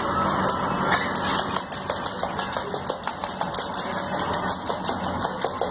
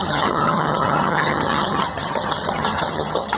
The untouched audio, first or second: first